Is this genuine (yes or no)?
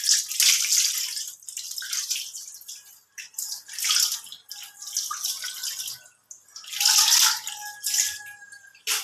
yes